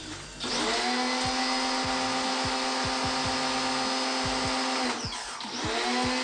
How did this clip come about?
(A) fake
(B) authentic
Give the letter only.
B